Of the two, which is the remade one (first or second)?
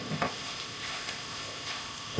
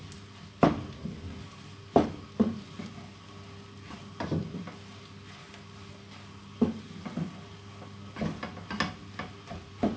first